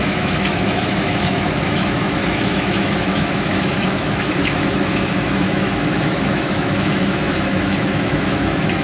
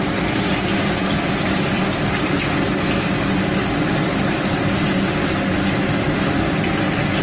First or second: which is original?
second